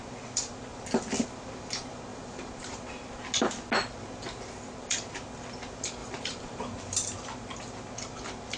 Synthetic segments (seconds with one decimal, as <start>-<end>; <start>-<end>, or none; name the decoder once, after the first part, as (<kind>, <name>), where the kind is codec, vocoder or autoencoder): 2.1-2.9 (vocoder, BigVGAN v2); 6.0-6.6